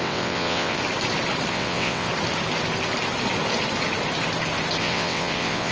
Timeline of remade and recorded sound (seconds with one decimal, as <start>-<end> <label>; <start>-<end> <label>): 0.0-0.8 remade; 0.8-1.5 recorded; 1.5-2.1 remade; 2.1-4.8 recorded; 4.8-5.7 remade